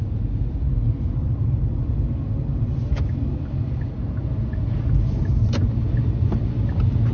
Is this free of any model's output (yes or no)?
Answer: yes